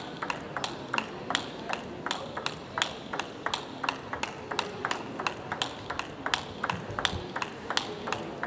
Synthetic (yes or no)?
no